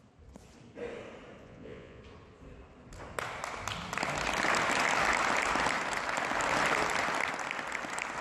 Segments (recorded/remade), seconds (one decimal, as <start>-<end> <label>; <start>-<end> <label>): 0.0-1.4 recorded; 1.4-2.0 remade; 2.0-8.2 recorded